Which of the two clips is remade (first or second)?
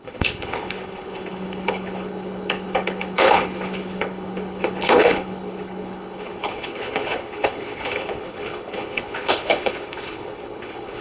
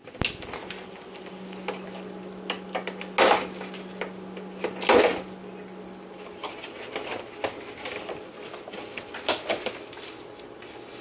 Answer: first